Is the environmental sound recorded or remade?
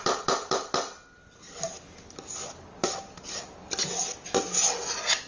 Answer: recorded